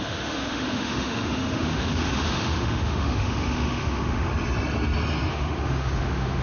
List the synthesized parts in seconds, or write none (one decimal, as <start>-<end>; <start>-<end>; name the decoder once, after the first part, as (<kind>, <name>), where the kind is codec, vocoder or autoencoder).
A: 0.0-4.3 (autoencoder, DAC-VAE); 5.3-6.4